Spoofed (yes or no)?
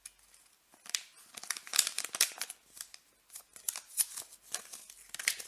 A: no